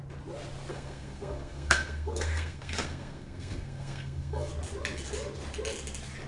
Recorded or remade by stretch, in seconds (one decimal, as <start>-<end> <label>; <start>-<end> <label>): 0.0-0.7 recorded; 0.7-4.5 remade; 4.5-6.3 recorded